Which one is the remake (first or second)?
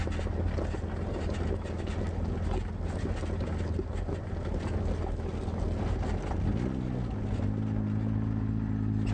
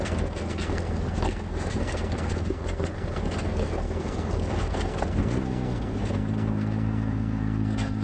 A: second